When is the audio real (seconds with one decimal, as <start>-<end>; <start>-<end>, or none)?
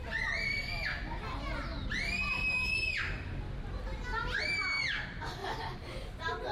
0.0-6.5